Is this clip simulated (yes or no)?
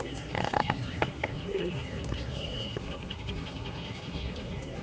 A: yes